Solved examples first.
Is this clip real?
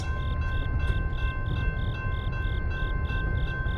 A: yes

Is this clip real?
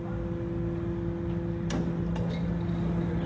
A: yes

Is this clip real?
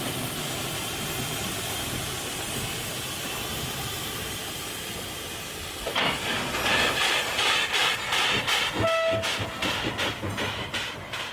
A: yes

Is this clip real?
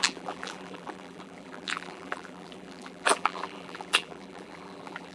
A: no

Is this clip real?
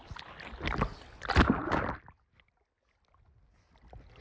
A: yes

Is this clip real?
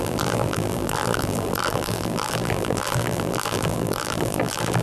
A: no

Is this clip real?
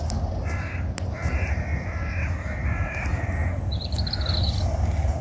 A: yes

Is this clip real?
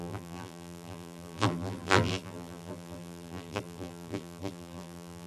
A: no